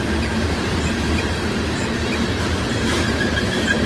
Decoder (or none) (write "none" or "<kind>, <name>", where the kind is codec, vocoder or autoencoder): none